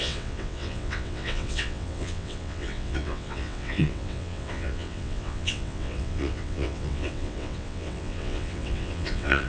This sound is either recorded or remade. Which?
remade